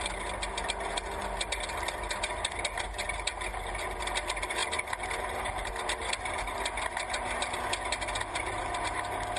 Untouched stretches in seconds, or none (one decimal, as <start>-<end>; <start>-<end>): 0.0-9.4